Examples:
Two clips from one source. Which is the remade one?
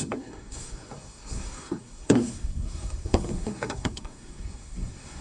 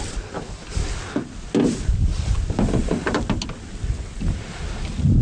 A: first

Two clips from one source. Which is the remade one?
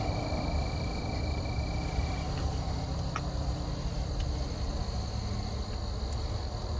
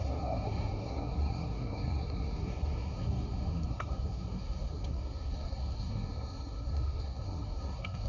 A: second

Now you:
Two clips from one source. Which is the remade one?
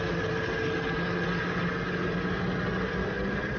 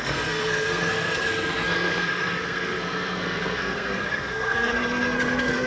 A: second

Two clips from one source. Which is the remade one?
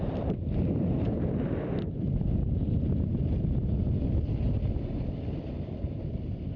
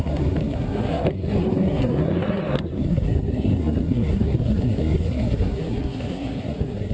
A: second